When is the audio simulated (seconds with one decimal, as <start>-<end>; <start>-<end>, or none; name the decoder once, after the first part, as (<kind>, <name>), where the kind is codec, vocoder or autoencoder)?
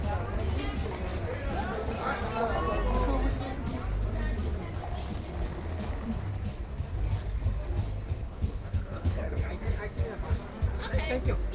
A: 8.2-9.5 (codec, HILCodec)